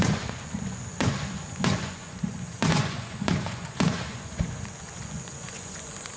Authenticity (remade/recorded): remade